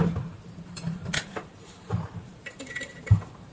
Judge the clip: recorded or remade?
remade